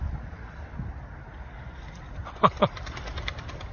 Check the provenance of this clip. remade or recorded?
recorded